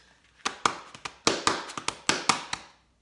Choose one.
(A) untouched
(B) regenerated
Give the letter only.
A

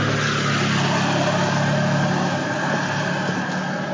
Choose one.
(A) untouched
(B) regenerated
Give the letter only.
A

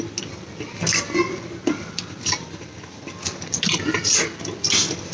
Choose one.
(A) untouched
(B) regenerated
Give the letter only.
A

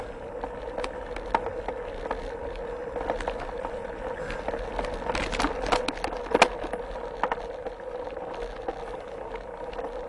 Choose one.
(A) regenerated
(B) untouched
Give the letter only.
B